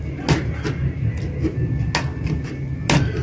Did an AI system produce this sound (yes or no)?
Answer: no